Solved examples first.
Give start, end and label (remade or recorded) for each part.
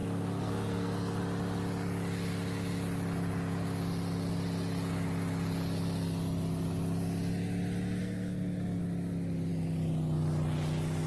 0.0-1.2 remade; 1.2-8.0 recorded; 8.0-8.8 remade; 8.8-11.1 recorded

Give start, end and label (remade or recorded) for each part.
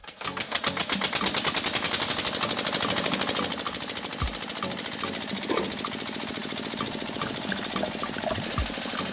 0.0-0.6 remade; 0.6-9.1 recorded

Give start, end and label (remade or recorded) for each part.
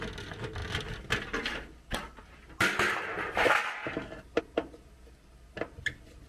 0.0-6.3 recorded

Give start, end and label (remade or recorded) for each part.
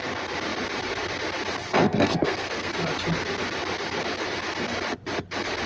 0.0-1.7 recorded; 1.7-2.7 remade; 2.7-5.7 recorded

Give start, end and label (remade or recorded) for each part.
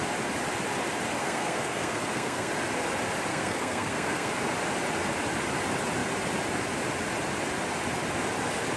0.0-1.2 recorded; 1.2-2.5 remade; 2.5-3.3 recorded; 3.3-4.3 remade; 4.3-8.8 recorded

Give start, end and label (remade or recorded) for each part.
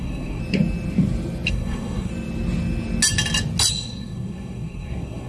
0.0-0.4 remade; 0.4-1.5 recorded; 1.5-2.1 remade; 2.1-3.7 recorded; 3.7-5.3 remade